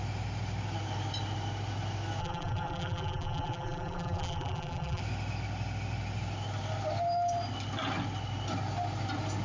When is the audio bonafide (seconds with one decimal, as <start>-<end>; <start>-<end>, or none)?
0.0-2.2; 5.0-9.4